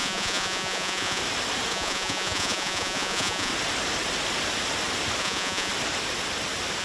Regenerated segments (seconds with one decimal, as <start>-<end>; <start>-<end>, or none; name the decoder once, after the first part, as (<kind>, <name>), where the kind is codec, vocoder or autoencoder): 0.0-1.2 (vocoder, Vocos); 1.7-3.5; 5.2-5.7